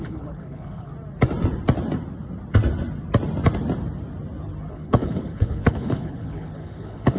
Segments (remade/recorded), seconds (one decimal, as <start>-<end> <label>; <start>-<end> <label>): 0.0-0.9 remade; 0.9-4.7 recorded; 4.7-7.2 remade